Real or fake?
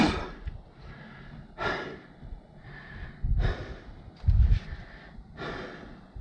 real